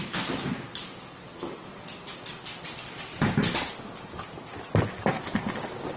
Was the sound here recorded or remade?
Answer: recorded